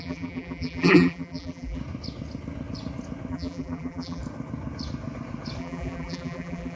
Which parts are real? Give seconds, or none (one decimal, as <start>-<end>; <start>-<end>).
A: 1.8-3.3; 4.2-5.6